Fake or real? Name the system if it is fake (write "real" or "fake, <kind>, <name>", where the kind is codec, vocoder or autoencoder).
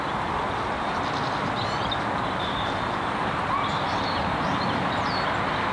real